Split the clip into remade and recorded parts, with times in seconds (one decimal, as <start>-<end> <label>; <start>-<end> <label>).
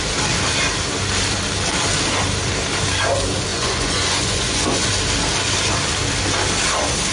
0.0-3.5 recorded; 3.5-4.9 remade; 4.9-7.1 recorded